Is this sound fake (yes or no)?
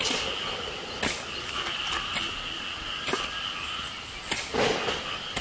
no